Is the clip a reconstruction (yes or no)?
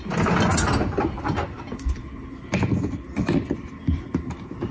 no